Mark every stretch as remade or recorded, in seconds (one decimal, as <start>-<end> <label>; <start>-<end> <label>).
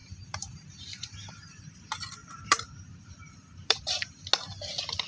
0.0-1.6 remade; 1.6-2.2 recorded; 2.2-4.2 remade; 4.2-5.1 recorded